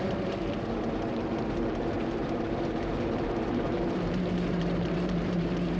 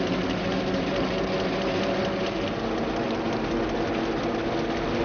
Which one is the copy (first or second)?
first